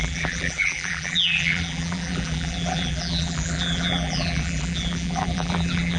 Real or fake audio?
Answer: fake